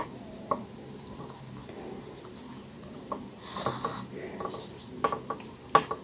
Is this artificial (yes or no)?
no